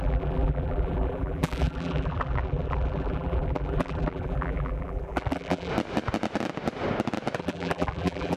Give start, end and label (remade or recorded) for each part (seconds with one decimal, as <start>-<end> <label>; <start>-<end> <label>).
0.0-5.7 remade; 5.7-7.4 recorded; 7.4-8.4 remade